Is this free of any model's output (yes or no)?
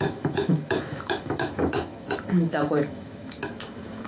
no